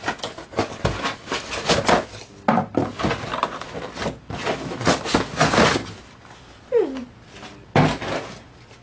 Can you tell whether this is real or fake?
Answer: real